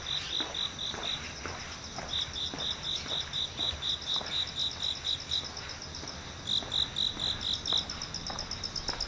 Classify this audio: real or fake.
real